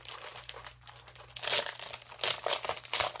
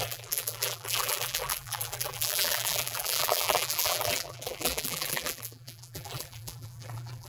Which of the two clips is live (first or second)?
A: first